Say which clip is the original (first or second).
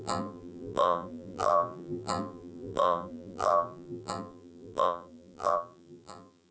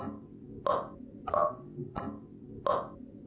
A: second